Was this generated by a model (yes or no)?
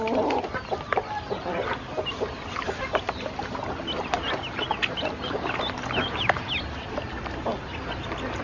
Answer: no